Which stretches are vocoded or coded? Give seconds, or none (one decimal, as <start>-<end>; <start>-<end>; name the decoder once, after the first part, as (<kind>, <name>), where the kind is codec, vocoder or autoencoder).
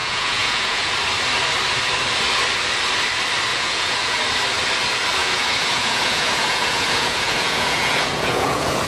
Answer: 0.0-0.9 (vocoder, Vocos); 3.5-4.2; 5.2-8.9